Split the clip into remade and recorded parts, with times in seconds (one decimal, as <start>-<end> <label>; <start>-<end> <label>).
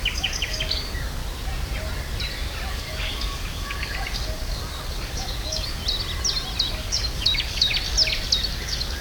0.0-1.2 remade; 1.2-2.7 recorded; 2.7-5.8 remade; 5.8-6.7 recorded; 6.7-7.7 remade; 7.7-8.5 recorded; 8.5-9.0 remade